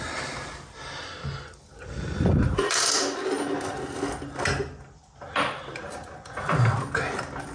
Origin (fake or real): real